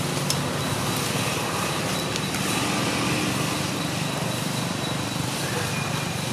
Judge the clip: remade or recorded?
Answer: recorded